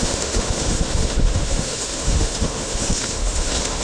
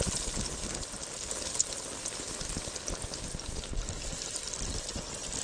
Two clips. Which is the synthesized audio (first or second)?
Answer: first